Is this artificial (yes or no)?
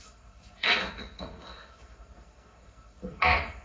yes